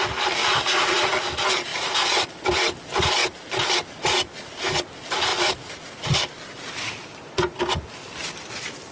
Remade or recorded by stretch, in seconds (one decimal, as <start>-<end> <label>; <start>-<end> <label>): 0.0-0.4 recorded; 0.4-1.0 remade; 1.0-3.2 recorded; 3.2-4.7 remade; 4.7-5.3 recorded; 5.3-6.1 remade; 6.1-8.9 recorded